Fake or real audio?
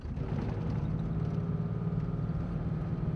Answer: real